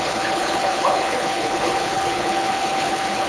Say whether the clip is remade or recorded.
remade